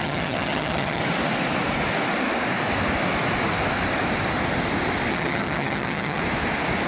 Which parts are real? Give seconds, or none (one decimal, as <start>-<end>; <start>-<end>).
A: 1.0-5.1; 6.2-6.9